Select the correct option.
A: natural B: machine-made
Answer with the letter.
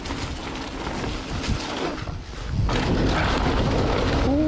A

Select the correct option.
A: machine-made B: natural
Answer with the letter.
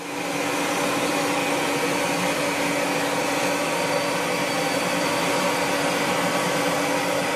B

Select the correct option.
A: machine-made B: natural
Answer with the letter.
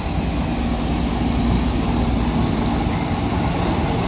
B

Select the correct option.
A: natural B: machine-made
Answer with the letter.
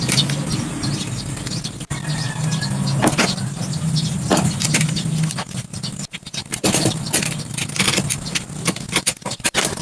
A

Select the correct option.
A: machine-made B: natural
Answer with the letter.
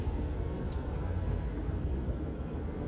A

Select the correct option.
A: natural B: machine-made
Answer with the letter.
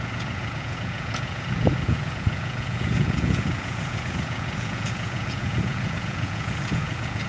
B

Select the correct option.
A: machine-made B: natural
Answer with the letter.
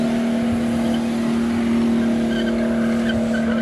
B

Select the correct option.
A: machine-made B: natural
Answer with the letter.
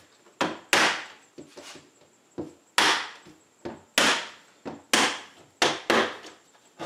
B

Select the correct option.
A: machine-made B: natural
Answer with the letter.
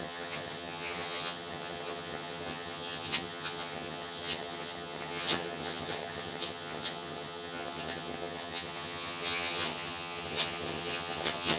A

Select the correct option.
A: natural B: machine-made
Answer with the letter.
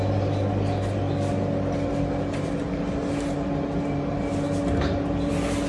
A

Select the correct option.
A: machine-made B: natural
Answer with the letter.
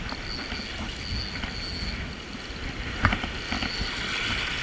B